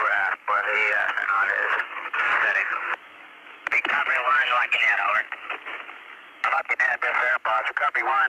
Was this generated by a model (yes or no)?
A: yes